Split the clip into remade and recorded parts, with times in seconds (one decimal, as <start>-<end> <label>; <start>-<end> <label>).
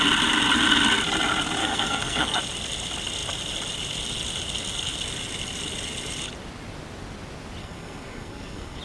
0.0-1.6 recorded; 1.6-2.4 remade; 2.4-7.6 recorded; 7.6-8.8 remade